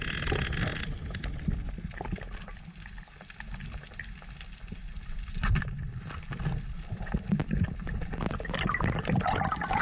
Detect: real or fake real